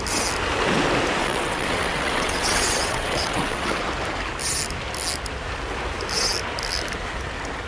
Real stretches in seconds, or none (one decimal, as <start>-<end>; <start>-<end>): 0.0-1.2; 3.8-7.7